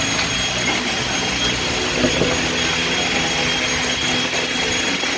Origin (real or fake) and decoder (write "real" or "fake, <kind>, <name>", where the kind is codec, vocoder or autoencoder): real